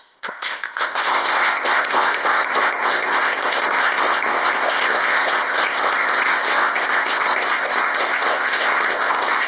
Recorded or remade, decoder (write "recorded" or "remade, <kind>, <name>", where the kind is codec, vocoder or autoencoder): remade, codec, ZipCodec